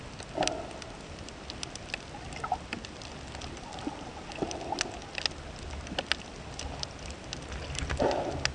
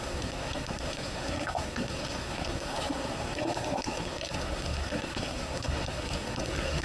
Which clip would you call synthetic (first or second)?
second